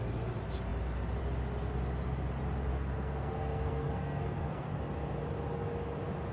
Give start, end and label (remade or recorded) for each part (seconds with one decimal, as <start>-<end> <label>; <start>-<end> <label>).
0.0-2.7 recorded; 2.7-4.8 remade; 4.8-6.3 recorded